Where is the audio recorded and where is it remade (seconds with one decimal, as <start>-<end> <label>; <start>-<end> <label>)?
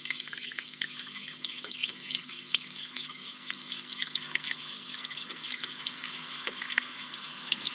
0.0-7.7 remade